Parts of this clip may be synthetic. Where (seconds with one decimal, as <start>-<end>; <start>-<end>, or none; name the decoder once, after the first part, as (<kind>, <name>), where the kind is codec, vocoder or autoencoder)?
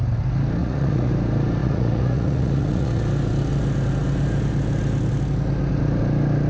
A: 0.6-1.1 (vocoder, Vocos); 1.6-3.0